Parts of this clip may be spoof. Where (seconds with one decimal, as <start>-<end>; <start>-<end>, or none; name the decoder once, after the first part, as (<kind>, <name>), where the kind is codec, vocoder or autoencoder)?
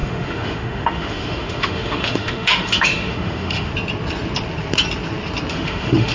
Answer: 0.0-3.7 (autoencoder, DAC-VAE); 5.5-6.1